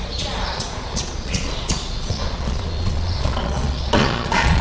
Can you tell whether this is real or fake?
fake